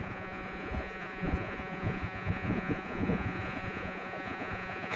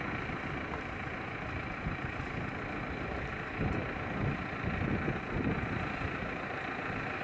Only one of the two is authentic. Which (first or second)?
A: second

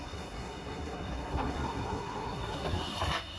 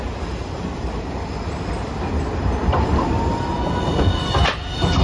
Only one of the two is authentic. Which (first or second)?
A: second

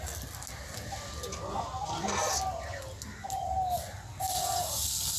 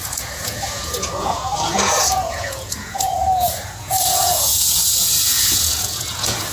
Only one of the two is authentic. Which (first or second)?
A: first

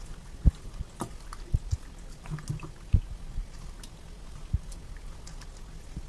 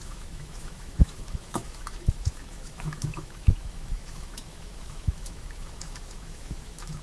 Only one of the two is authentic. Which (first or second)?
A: first